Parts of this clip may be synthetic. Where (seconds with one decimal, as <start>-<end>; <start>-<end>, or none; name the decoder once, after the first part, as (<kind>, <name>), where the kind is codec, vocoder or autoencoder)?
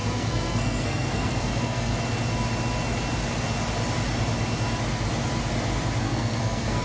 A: 0.0-1.9 (codec, SNAC); 6.0-6.8